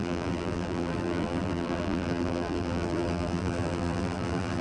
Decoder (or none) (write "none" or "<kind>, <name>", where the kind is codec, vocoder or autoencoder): vocoder, BigVGAN v2